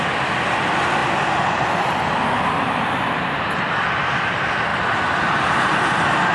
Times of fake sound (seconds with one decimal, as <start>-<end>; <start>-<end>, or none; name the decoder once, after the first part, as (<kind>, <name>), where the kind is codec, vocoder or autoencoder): none